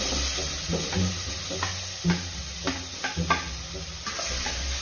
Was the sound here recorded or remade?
recorded